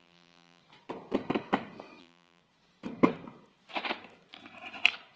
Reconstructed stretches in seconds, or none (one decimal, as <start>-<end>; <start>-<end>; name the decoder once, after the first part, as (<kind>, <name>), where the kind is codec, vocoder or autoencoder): 0.0-0.6 (vocoder, BigVGAN v2); 2.0-2.4